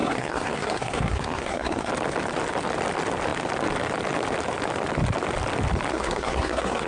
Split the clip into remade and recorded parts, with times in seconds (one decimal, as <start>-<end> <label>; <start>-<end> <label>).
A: 0.0-1.9 remade; 1.9-5.9 recorded; 5.9-6.9 remade